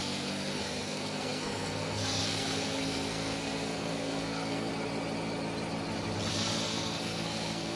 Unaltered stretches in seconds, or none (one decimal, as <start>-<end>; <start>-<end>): 4.7-6.3